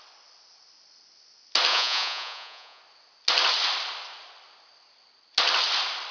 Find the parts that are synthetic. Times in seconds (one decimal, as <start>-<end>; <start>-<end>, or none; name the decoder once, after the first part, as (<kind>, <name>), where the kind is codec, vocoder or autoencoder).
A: 1.7-2.8 (vocoder, Vocos)